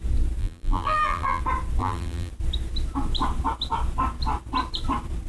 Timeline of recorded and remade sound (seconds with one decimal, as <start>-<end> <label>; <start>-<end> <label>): 0.0-0.4 recorded; 0.4-1.4 remade; 1.4-1.8 recorded; 1.8-2.3 remade; 2.3-5.3 recorded